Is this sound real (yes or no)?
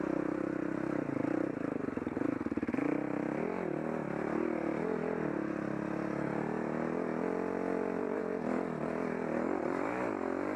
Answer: yes